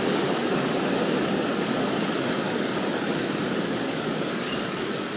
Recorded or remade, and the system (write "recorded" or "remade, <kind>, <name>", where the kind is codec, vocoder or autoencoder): remade, codec, DAC